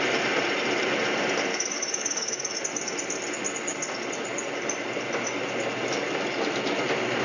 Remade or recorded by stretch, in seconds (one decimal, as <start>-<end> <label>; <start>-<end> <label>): 0.0-1.5 recorded; 1.5-2.6 remade; 2.6-7.2 recorded

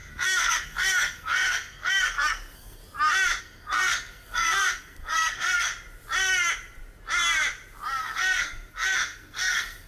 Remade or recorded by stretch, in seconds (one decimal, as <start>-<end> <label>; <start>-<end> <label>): 0.0-2.8 remade; 2.8-3.4 recorded; 3.4-5.7 remade; 5.7-8.0 recorded; 8.0-9.9 remade